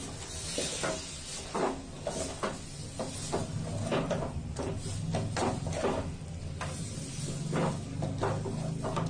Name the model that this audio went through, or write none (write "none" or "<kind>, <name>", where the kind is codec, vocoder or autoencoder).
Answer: none